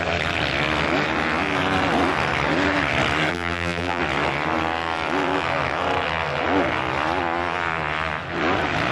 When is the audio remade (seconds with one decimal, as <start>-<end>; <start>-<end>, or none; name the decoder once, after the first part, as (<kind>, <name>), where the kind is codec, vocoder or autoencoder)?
3.3-4.0 (vocoder, BigVGAN v2)